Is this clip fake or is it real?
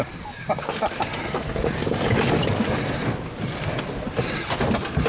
real